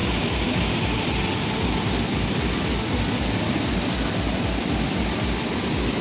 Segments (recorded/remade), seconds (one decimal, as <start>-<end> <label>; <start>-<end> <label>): 0.0-6.0 recorded